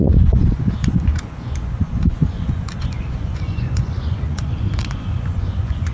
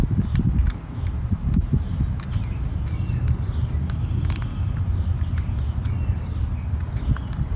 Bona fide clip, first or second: second